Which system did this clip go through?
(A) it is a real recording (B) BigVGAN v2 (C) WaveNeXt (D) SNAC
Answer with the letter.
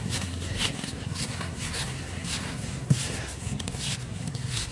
D